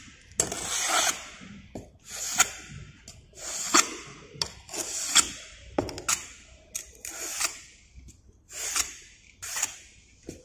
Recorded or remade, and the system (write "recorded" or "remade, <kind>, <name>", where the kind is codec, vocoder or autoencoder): recorded